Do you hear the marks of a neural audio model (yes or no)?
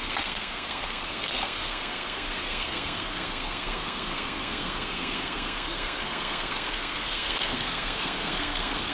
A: yes